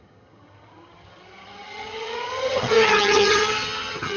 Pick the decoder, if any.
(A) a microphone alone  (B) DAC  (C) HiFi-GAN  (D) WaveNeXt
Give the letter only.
C